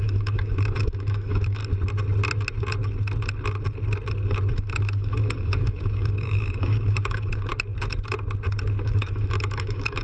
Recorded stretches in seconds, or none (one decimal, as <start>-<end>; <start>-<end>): 1.6-4.5; 7.5-8.8